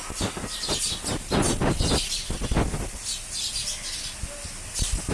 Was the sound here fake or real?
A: real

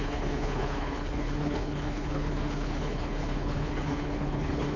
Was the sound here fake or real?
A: fake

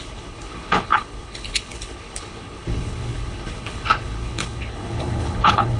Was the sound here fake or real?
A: fake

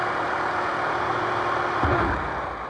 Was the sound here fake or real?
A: real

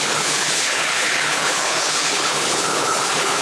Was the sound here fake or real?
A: fake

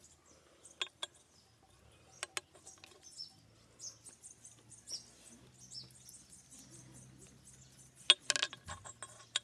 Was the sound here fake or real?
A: real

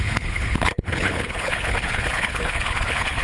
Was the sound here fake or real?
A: fake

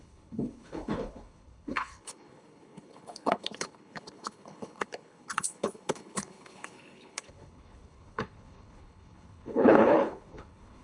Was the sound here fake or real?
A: fake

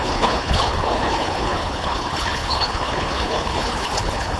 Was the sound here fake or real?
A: fake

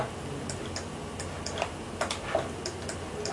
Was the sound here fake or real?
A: real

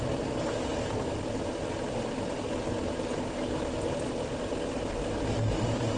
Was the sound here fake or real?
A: real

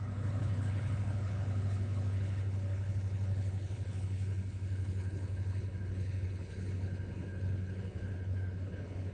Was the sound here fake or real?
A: fake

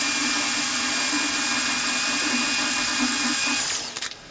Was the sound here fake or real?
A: real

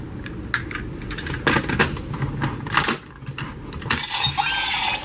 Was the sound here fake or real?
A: real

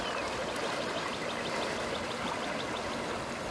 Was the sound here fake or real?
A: real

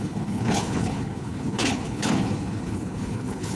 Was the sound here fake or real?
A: fake